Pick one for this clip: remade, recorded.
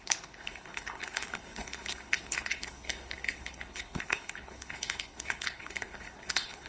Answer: remade